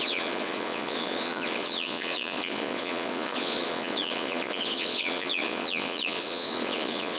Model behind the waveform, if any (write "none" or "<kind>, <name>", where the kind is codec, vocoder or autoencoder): vocoder, Vocos